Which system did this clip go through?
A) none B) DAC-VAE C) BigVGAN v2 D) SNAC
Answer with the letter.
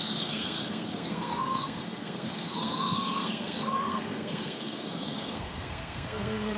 D